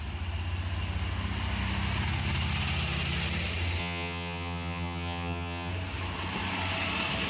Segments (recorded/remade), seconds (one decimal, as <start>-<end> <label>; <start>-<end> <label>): 0.0-3.8 recorded; 3.8-5.7 remade; 5.7-7.3 recorded